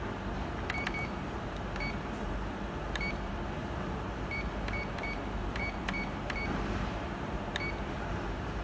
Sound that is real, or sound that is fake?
fake